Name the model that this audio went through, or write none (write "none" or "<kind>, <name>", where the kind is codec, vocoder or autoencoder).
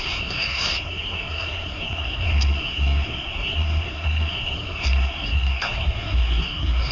codec, SNAC